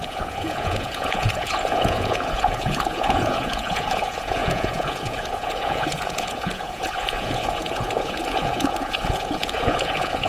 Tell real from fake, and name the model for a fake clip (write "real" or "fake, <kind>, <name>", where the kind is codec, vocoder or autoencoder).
fake, vocoder, Vocos